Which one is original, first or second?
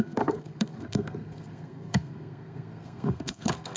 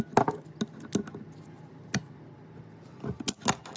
second